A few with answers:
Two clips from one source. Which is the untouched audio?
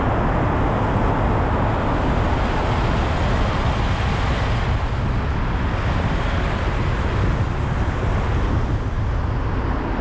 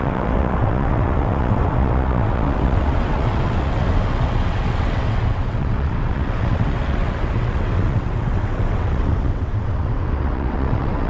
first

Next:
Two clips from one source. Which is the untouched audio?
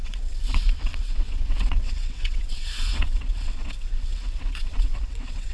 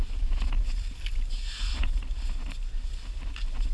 second